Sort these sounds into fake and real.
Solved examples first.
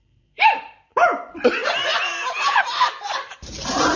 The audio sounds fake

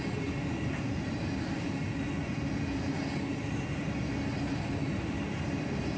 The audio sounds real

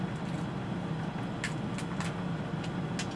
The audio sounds real